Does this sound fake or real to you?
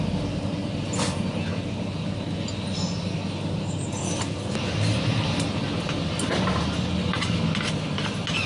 real